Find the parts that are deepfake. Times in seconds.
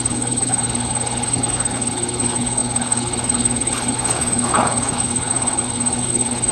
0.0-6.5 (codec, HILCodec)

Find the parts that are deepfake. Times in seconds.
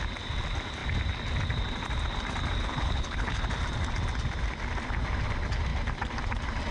2.6-3.4 (codec, HILCodec)